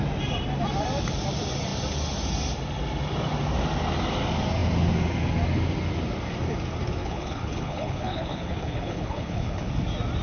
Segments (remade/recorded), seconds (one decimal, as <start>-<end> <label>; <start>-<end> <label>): 0.0-7.0 recorded; 7.0-9.7 remade; 9.7-10.2 recorded